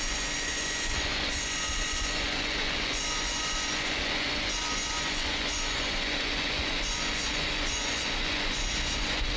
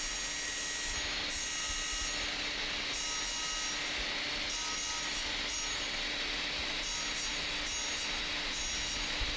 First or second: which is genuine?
second